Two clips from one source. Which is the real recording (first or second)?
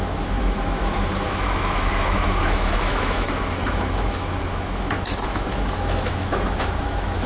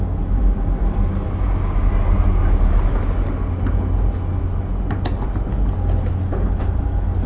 second